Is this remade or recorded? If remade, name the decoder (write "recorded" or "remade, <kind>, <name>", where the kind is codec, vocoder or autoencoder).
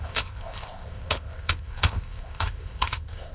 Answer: remade, codec, ZipCodec